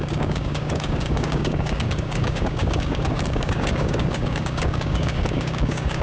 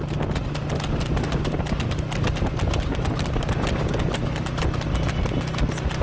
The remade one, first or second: first